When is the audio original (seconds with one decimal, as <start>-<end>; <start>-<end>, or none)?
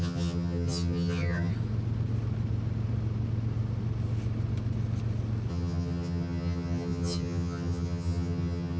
1.5-5.5